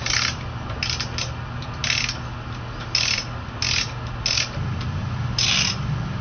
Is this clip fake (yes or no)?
no